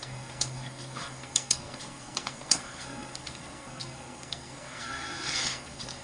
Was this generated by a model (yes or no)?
yes